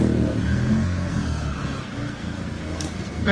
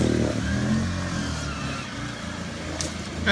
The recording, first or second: second